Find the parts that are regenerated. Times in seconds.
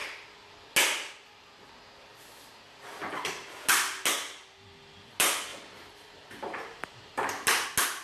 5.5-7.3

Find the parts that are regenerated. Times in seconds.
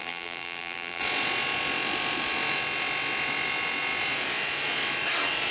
0.0-1.0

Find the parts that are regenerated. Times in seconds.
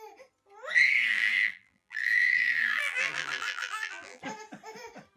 1.1-4.2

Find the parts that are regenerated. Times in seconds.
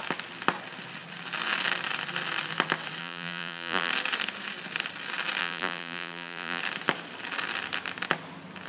3.0-3.9; 5.4-6.6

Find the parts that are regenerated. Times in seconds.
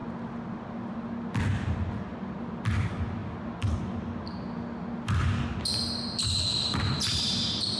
none